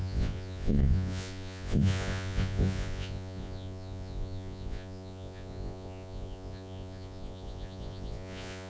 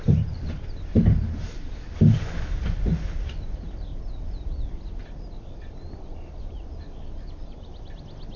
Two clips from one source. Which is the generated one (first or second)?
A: first